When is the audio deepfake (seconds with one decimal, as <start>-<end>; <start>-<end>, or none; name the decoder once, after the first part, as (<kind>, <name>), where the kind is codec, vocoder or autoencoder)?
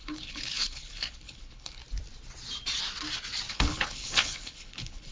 0.0-1.8 (codec, HILCodec); 3.5-5.1